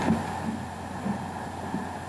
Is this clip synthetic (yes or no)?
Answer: no